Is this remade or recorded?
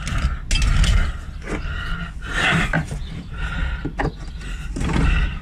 recorded